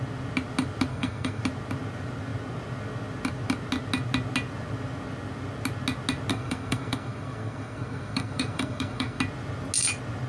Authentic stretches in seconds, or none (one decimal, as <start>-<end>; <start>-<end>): 0.0-0.9; 1.4-6.3; 9.2-10.3